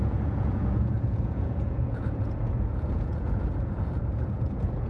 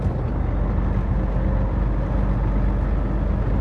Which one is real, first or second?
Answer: second